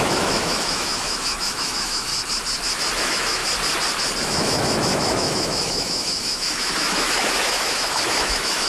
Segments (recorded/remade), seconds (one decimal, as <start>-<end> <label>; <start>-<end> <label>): 0.0-2.1 remade; 2.1-3.0 recorded; 3.0-3.4 remade; 3.4-4.2 recorded; 4.2-8.7 remade